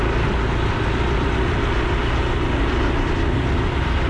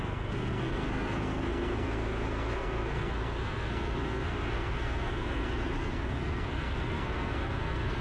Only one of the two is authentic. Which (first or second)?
first